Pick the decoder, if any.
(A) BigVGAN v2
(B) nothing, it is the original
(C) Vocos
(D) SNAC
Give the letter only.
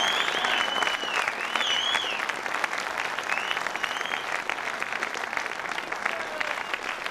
B